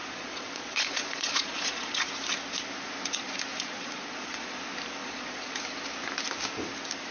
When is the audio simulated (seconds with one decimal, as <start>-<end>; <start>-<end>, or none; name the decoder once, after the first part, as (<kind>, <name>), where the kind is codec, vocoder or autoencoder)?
0.0-2.1 (vocoder, Vocos); 3.5-4.6; 5.0-5.6